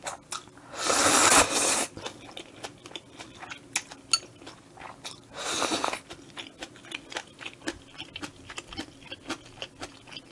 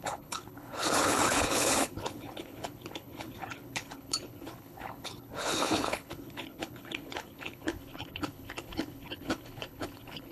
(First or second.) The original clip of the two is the first